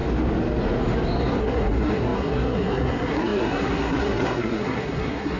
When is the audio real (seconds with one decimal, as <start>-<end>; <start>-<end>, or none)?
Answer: 0.0-1.4